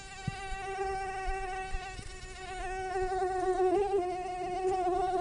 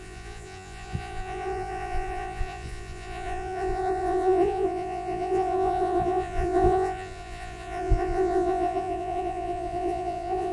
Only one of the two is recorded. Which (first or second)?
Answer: first